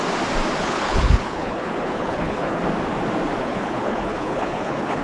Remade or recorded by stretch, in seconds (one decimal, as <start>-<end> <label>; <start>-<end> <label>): 0.0-0.6 recorded; 0.6-2.6 remade; 2.6-3.4 recorded; 3.4-5.0 remade

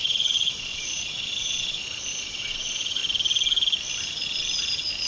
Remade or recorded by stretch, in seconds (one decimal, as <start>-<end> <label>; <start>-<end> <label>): 0.0-3.0 remade; 3.0-5.1 recorded

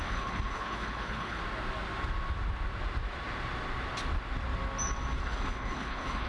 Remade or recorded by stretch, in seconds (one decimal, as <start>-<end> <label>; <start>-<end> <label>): 0.0-1.4 remade; 1.4-5.2 recorded; 5.2-6.3 remade

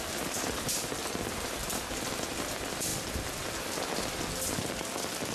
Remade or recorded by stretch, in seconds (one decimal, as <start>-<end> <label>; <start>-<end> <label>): 0.0-1.6 remade; 1.6-2.5 recorded; 2.5-5.3 remade

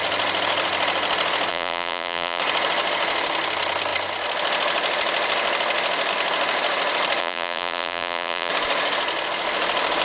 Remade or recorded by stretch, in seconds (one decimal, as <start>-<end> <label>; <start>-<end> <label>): 0.0-1.5 recorded; 1.5-2.4 remade; 2.4-7.2 recorded; 7.2-8.5 remade; 8.5-10.0 recorded